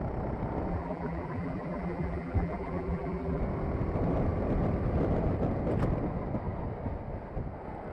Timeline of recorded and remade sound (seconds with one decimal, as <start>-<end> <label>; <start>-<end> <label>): 0.0-0.7 recorded; 0.7-3.4 remade; 3.4-7.9 recorded